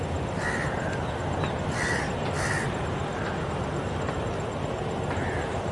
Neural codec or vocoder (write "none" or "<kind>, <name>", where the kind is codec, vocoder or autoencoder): none